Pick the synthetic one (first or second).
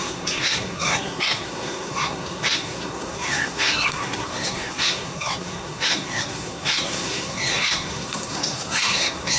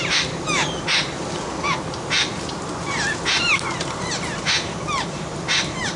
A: first